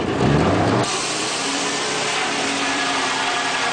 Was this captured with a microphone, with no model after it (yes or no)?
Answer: no